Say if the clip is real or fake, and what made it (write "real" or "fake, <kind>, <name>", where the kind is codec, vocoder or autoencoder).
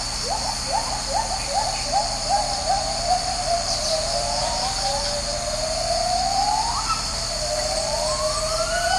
fake, vocoder, BigVGAN v2